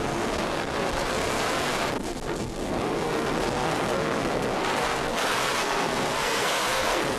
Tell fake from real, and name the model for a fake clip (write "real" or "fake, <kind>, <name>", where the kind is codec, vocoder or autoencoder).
fake, codec, SNAC